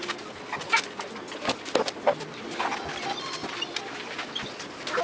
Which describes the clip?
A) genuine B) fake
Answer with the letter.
A